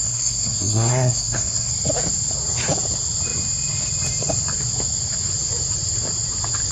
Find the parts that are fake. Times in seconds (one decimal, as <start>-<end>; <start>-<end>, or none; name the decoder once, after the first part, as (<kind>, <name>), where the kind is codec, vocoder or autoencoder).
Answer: 0.0-1.7 (codec, SNAC)